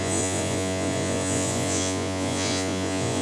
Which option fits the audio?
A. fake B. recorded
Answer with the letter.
A